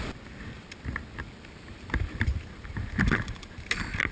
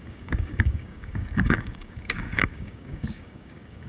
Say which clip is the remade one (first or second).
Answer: second